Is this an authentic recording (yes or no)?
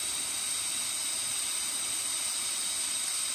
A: yes